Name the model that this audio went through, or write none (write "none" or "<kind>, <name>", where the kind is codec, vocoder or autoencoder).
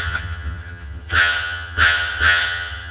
vocoder, HiFi-GAN